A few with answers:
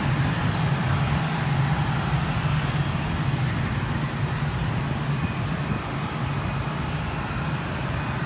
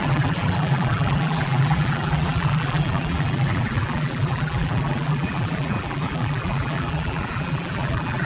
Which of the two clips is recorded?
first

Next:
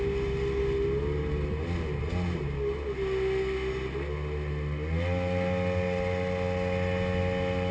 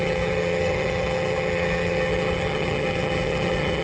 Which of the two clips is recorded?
first